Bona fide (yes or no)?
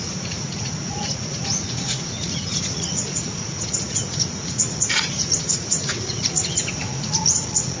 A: no